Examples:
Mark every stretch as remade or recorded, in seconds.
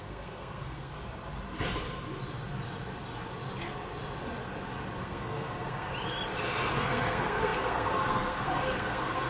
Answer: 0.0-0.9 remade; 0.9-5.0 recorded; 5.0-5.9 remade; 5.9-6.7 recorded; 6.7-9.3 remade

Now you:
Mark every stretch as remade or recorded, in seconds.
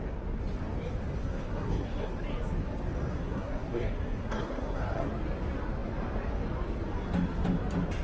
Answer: 0.0-1.2 recorded; 1.2-2.1 remade; 2.1-3.1 recorded; 3.1-5.1 remade; 5.1-8.0 recorded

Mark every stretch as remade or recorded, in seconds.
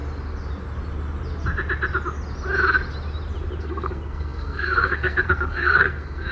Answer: 0.0-3.6 recorded; 3.6-6.3 remade